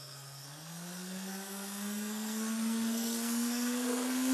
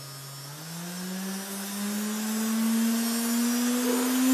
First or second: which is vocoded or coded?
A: first